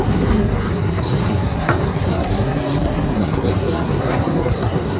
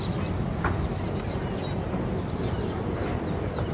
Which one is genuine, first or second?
second